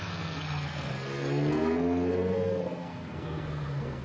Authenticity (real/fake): fake